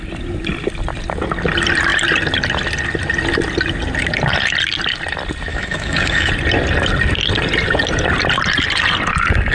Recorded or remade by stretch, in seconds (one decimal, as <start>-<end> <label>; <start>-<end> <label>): 0.0-5.5 recorded; 5.5-6.3 remade; 6.3-9.5 recorded